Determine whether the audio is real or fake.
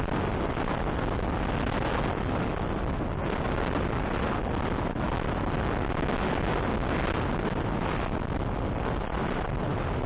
real